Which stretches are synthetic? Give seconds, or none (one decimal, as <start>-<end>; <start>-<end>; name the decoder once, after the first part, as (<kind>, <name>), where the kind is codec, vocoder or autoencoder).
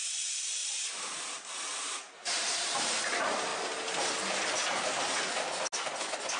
0.6-3.0 (vocoder, BigVGAN v2); 3.5-4.1